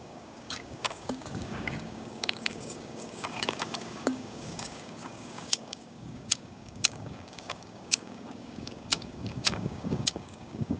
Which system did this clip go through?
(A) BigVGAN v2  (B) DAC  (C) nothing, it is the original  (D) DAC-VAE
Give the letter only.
B